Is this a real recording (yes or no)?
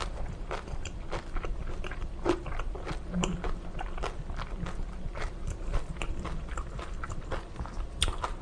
no